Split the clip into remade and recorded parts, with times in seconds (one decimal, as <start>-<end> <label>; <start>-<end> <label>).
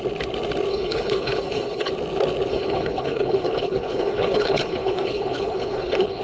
0.0-0.7 recorded; 0.7-1.9 remade; 1.9-2.5 recorded; 2.5-6.2 remade